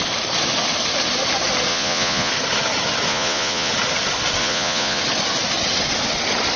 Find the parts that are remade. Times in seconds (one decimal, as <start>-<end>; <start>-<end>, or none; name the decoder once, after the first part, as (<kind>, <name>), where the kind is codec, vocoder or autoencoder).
1.7-2.3 (vocoder, Vocos); 3.1-3.7; 4.4-5.0